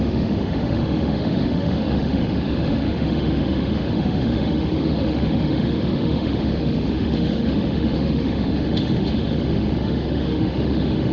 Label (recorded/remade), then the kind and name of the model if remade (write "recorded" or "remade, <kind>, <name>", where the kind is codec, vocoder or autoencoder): remade, autoencoder, DAC-VAE